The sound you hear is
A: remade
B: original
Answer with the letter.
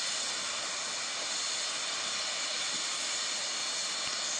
B